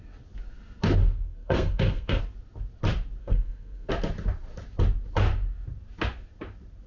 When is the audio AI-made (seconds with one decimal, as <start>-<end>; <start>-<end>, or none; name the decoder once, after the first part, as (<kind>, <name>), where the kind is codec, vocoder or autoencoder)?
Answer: 1.0-2.2 (codec, SNAC); 3.2-3.9